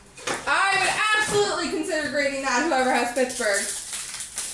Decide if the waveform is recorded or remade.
recorded